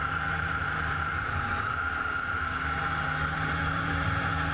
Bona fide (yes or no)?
no